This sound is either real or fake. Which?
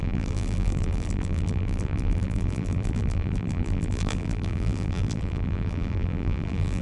fake